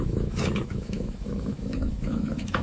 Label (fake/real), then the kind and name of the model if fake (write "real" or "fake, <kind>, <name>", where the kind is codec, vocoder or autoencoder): fake, autoencoder, DAC-VAE